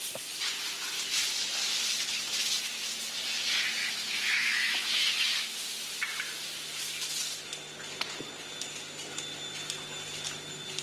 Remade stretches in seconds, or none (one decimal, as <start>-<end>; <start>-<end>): 3.8-5.1